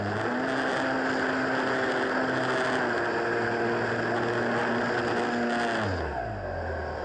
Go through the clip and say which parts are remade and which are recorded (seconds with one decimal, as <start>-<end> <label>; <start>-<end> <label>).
0.0-7.0 recorded